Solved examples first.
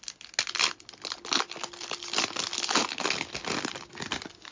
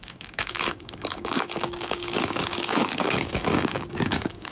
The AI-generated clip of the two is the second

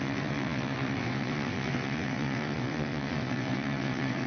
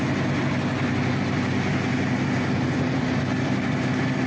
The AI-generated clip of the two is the first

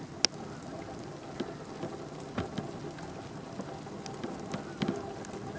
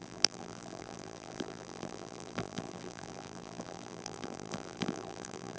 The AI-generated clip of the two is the second